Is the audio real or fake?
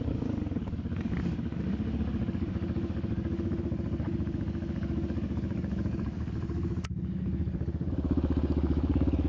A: fake